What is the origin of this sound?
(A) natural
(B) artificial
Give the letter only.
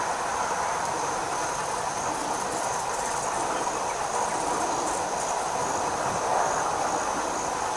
A